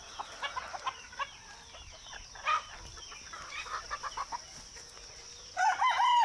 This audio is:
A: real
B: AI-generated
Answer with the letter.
A